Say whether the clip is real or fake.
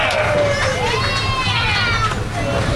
real